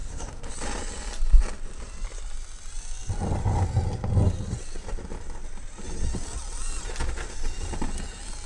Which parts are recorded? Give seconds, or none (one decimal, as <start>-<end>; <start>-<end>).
0.5-8.5